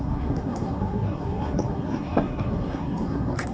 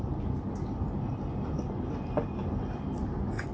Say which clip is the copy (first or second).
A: first